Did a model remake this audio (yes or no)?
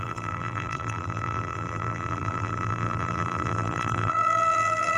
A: yes